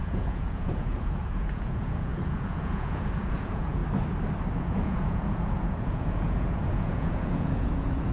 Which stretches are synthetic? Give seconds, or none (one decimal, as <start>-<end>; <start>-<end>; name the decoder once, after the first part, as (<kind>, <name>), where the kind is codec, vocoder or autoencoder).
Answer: 0.0-3.8 (vocoder, Vocos); 4.5-8.1

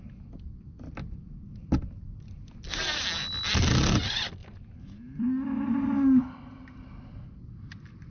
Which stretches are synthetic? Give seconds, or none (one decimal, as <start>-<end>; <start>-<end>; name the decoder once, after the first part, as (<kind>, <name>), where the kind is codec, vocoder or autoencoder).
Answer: none

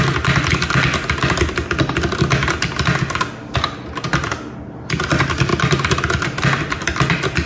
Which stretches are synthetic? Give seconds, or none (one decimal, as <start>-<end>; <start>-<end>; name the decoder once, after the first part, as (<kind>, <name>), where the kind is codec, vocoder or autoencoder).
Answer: none

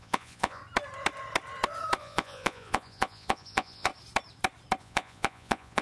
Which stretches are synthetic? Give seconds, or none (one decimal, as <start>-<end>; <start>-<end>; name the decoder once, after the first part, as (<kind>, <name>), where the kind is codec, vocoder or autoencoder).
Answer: 0.0-0.6 (vocoder, Vocos); 2.0-3.9; 4.8-5.8

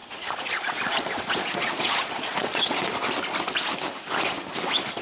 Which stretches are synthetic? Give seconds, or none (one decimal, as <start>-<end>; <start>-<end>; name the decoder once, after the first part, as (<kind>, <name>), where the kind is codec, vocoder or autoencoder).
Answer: 0.0-2.9 (vocoder, Vocos)

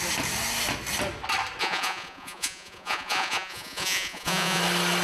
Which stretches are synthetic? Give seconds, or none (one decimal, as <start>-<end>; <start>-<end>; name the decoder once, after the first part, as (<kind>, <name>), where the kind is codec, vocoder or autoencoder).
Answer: 1.6-4.6 (vocoder, Vocos)